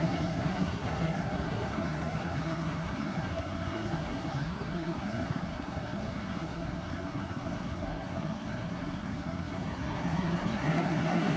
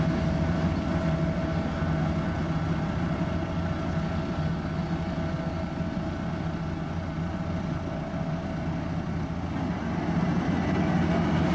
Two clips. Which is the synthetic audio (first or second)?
first